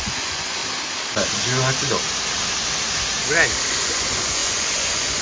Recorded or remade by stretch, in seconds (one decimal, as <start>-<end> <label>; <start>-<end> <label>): 0.0-0.6 remade; 0.6-3.7 recorded; 3.7-5.2 remade